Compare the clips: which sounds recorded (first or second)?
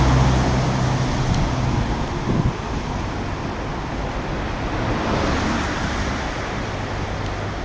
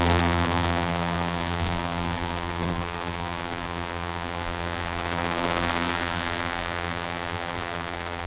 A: first